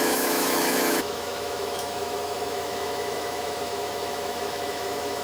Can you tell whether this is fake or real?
fake